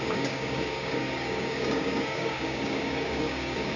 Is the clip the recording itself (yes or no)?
no